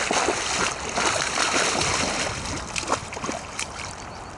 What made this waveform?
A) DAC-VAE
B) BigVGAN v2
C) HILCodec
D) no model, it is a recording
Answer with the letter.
D